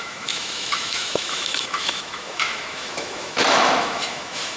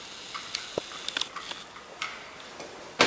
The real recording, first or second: second